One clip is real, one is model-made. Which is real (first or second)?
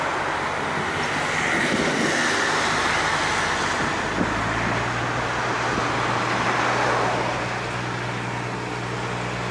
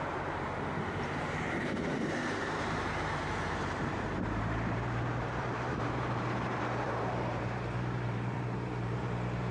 first